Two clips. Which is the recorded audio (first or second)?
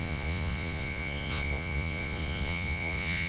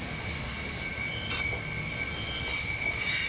second